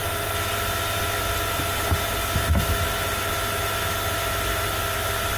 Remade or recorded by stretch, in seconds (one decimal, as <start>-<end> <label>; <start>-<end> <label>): 0.0-5.4 recorded